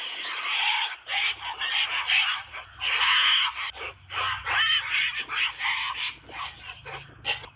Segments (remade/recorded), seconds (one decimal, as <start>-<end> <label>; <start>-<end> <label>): 0.0-7.6 recorded